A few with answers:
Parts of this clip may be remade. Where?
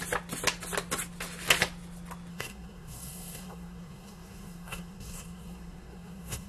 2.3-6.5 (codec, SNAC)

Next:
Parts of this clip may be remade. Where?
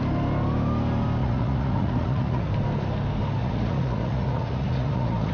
1.2-2.5 (vocoder, Vocos); 3.4-5.3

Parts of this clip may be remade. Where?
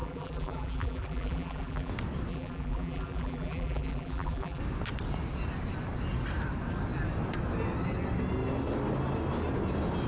0.0-1.9 (vocoder, BigVGAN v2); 2.3-4.6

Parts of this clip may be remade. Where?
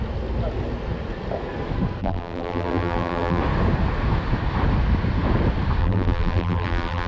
2.0-3.4 (vocoder, BigVGAN v2); 5.8-7.1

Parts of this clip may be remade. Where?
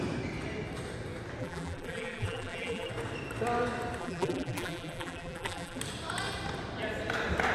1.4-2.9 (vocoder, BigVGAN v2); 4.0-5.8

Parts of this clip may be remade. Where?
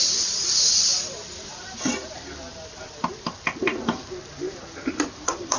0.0-0.9 (vocoder, BigVGAN v2); 4.3-5.6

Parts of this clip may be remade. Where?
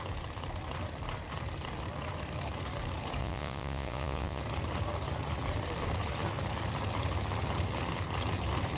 3.2-4.4 (vocoder, Vocos)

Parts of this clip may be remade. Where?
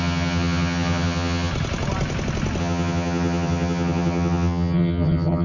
0.0-1.5 (vocoder, HiFi-GAN); 2.6-5.4